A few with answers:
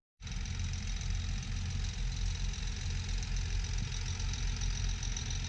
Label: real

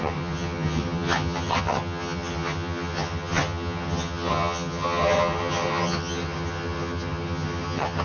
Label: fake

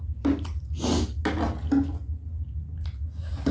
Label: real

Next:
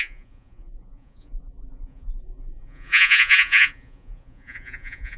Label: fake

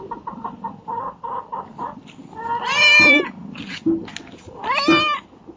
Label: real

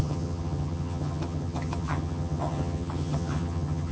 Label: fake